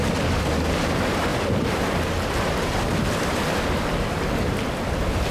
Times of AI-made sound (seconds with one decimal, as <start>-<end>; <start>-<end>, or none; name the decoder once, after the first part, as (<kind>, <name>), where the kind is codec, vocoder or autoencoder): none